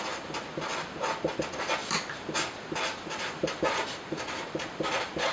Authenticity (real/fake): real